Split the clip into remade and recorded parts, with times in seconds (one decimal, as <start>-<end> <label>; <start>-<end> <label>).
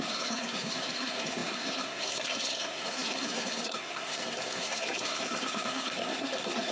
0.0-6.7 remade